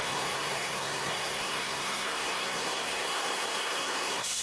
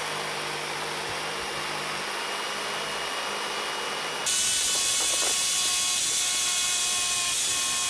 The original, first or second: second